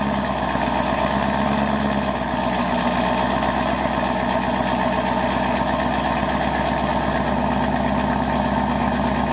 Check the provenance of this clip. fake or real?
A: real